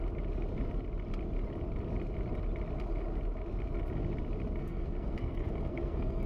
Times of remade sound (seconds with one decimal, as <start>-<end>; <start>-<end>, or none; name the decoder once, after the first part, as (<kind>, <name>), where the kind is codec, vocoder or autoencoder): 4.6-6.3 (codec, SNAC)